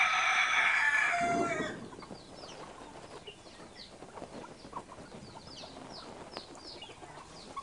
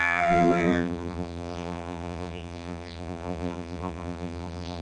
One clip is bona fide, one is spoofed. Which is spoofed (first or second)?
second